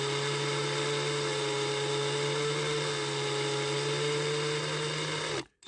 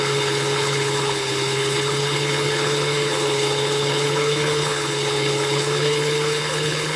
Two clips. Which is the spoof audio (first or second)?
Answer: second